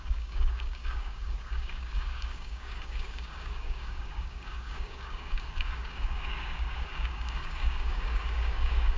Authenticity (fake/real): fake